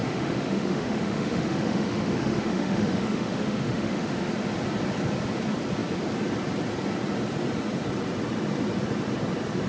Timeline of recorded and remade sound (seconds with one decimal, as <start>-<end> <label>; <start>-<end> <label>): 0.0-4.3 remade; 4.3-9.7 recorded